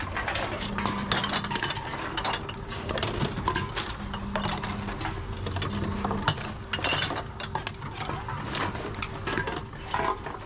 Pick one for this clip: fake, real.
real